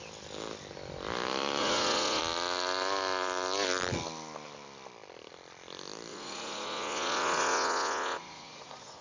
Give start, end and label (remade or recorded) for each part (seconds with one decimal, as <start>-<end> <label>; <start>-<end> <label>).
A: 0.0-1.6 recorded; 1.6-2.2 remade; 2.2-6.1 recorded; 6.1-9.0 remade